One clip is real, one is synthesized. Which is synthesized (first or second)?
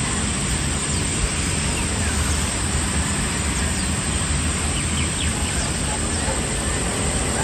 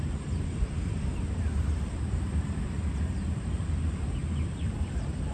second